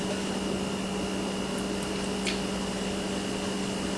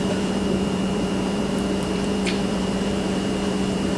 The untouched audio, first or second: first